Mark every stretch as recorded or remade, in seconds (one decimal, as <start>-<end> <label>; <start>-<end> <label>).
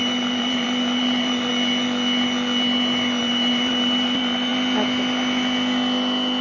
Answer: 0.0-1.5 remade; 1.5-3.2 recorded; 3.2-4.5 remade; 4.5-6.4 recorded